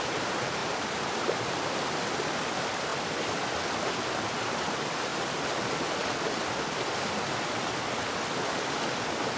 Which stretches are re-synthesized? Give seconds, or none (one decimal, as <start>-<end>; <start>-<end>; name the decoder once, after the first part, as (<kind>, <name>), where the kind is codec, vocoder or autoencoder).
0.6-2.5 (vocoder, BigVGAN v2)